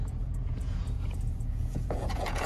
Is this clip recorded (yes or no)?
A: no